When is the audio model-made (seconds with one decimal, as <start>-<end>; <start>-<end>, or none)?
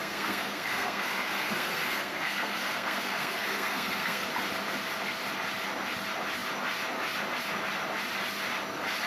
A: 0.0-4.3